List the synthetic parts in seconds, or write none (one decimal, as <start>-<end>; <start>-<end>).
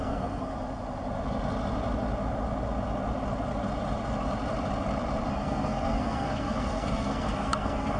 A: 0.0-0.5; 5.3-8.0